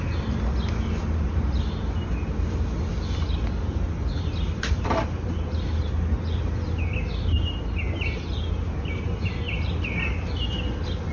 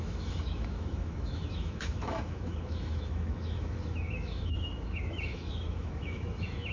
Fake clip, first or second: second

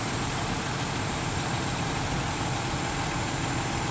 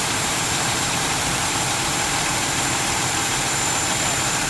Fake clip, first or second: second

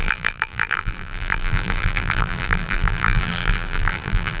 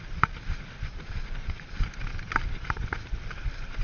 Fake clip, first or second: first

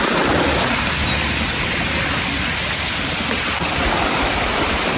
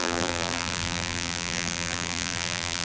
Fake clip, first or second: second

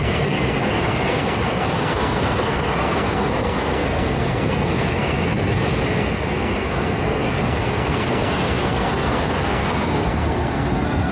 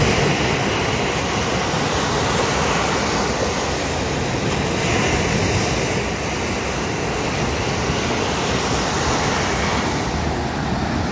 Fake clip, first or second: first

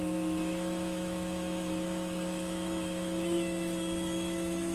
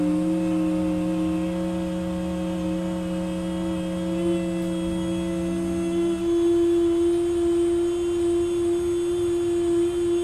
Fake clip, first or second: first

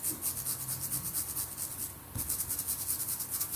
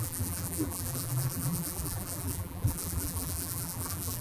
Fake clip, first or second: second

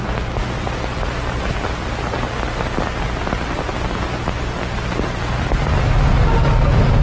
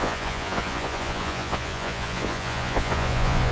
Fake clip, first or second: second